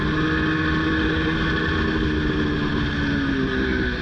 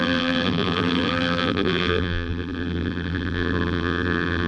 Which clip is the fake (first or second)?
second